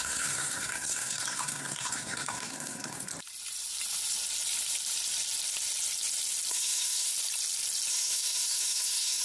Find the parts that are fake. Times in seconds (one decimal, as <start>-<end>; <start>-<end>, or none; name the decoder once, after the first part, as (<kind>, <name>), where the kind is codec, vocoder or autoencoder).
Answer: 0.0-3.1 (codec, SNAC); 6.5-7.1; 7.9-9.2